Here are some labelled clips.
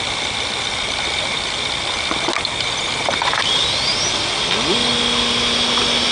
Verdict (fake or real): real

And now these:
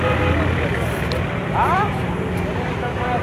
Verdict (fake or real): fake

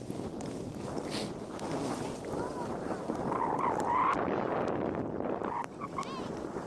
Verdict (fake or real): real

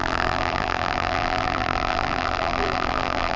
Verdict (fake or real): fake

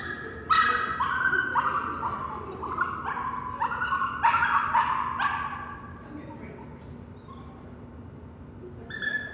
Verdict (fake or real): real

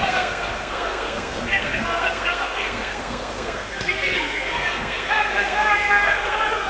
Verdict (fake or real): fake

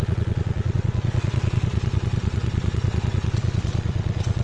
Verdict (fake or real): fake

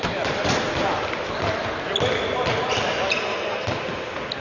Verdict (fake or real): real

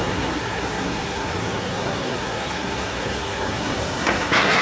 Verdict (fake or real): fake